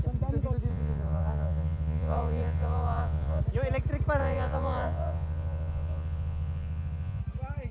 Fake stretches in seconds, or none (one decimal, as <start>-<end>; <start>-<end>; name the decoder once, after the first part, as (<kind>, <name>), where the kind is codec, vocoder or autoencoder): 0.7-3.4 (vocoder, Vocos); 4.2-7.2